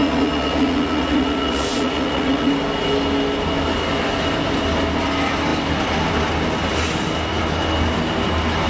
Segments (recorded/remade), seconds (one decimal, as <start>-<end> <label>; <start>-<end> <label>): 0.0-2.5 remade; 2.5-8.7 recorded